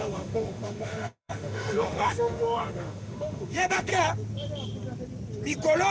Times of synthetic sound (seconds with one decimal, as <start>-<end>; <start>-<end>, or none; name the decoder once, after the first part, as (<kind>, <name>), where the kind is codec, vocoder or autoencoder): 0.0-3.9 (autoencoder, DAC-VAE)